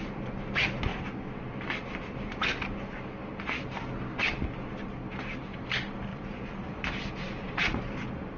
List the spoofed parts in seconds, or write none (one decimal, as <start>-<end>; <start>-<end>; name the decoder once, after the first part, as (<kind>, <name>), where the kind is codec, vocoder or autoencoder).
6.1-7.8 (vocoder, BigVGAN v2)